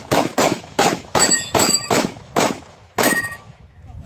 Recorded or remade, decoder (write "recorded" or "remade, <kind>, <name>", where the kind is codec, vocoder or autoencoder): remade, autoencoder, DAC-VAE